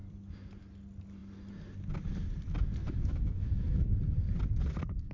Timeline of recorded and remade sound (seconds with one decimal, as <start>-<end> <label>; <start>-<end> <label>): 0.0-2.8 recorded; 2.8-3.9 remade; 3.9-5.1 recorded

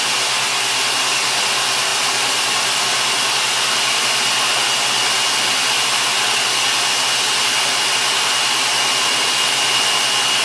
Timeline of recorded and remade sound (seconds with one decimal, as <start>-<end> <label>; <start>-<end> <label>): 0.0-10.4 recorded